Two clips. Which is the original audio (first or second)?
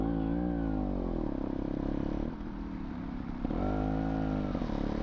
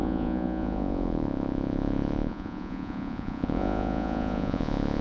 first